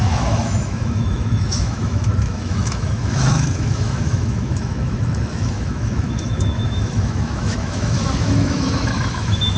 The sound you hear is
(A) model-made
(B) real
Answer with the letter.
A